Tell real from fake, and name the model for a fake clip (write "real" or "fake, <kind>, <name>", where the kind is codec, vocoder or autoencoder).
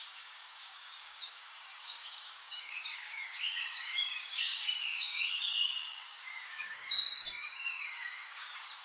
fake, codec, DAC